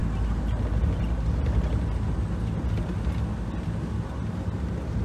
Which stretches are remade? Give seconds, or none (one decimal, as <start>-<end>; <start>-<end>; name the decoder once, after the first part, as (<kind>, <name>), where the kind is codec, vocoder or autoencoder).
none